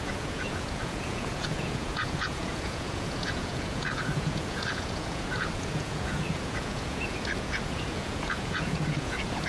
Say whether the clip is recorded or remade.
remade